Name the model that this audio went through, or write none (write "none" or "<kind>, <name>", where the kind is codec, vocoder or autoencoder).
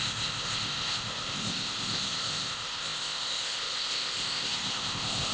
codec, ZipCodec